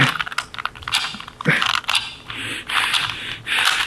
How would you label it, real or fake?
real